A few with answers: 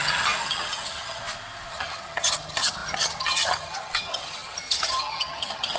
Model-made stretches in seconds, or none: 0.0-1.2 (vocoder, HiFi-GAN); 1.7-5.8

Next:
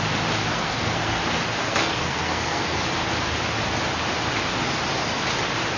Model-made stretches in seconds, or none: 0.5-1.2 (codec, SNAC); 1.6-2.8

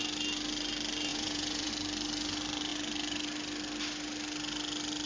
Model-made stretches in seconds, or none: 1.1-1.7 (vocoder, Vocos)

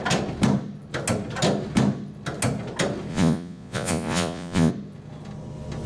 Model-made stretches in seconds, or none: 3.1-4.7 (vocoder, Vocos)